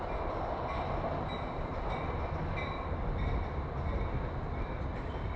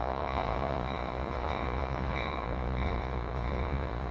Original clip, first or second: first